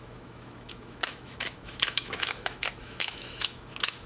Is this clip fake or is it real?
fake